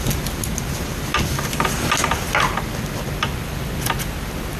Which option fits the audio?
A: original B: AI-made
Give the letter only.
A